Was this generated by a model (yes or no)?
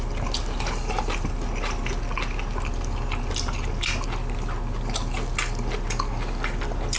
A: no